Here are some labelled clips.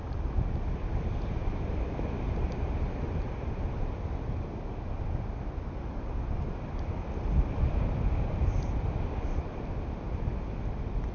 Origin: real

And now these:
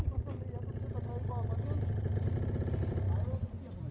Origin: real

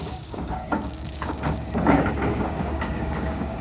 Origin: fake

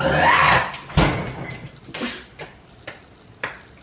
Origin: real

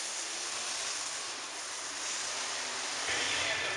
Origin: fake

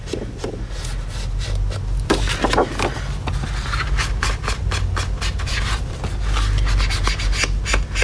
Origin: real